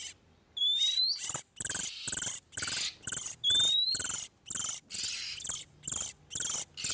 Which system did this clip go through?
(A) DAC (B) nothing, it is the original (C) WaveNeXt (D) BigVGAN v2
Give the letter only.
B